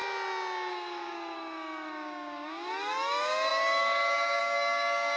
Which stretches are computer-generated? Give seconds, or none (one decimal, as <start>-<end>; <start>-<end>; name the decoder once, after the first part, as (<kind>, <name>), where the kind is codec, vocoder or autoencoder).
0.7-5.2 (codec, DAC)